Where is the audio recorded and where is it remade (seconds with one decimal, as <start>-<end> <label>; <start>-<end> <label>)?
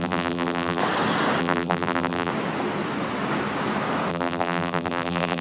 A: 0.0-0.8 remade; 0.8-1.4 recorded; 1.4-2.3 remade; 2.3-4.1 recorded; 4.1-5.4 remade